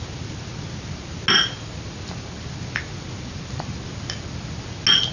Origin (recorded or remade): recorded